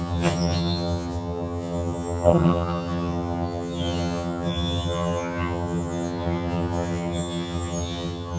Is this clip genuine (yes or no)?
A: no